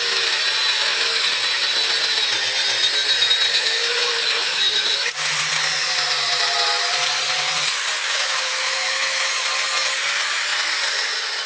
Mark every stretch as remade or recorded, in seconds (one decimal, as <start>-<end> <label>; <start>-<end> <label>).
0.0-0.8 recorded; 0.8-1.3 remade; 1.3-3.5 recorded; 3.5-5.1 remade; 5.1-8.0 recorded; 8.0-9.3 remade; 9.3-11.5 recorded